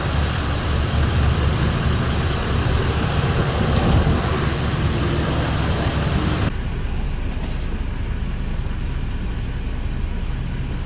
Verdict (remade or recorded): recorded